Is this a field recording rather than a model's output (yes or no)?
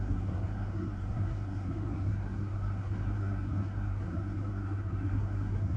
no